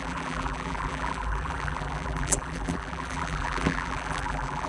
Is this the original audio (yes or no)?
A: no